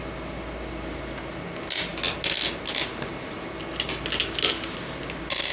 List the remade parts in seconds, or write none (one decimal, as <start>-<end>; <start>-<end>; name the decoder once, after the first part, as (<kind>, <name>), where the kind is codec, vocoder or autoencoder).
none